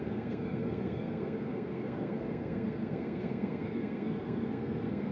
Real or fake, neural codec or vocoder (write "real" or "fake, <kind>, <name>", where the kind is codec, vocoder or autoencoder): fake, codec, SNAC